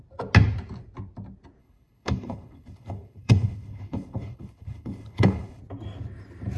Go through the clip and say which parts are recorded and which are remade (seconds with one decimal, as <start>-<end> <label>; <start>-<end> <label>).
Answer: 0.0-1.6 recorded; 1.6-5.6 remade; 5.6-6.6 recorded